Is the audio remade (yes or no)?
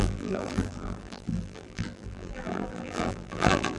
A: yes